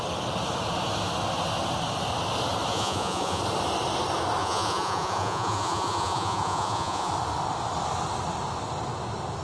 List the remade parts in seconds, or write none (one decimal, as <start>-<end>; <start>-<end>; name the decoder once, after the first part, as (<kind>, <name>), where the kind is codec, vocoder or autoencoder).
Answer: 2.7-3.4 (vocoder, Vocos); 4.4-7.1